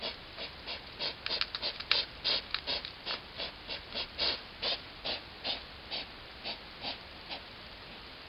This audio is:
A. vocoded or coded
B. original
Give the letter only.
B